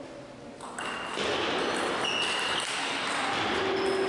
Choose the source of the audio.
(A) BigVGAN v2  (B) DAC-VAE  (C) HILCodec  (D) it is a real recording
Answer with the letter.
D